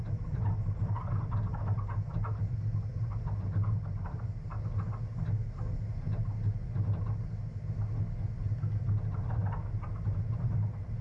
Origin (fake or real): real